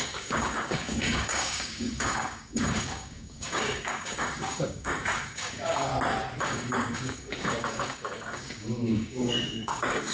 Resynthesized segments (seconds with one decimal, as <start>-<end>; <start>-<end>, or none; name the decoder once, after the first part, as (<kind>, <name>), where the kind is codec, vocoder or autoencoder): 0.0-5.9 (codec, DAC); 6.4-10.1